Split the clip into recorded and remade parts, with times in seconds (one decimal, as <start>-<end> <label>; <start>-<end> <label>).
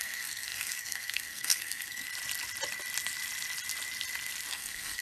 0.0-2.1 remade; 2.1-4.5 recorded; 4.5-5.0 remade